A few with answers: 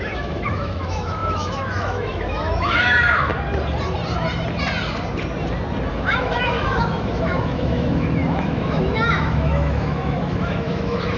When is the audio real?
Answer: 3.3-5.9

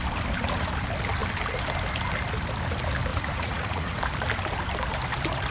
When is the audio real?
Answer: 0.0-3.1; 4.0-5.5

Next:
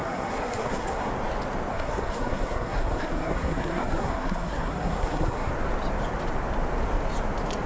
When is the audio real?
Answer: 1.1-1.7; 5.5-7.7

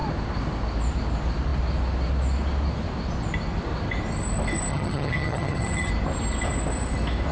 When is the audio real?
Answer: 0.0-4.7; 5.9-7.3

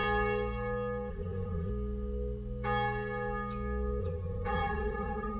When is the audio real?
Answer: 0.0-1.1; 1.7-4.0